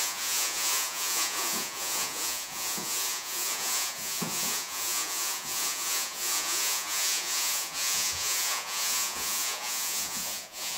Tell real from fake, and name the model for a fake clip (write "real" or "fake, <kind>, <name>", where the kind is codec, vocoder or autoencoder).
fake, vocoder, Vocos